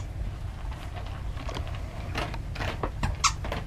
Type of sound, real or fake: real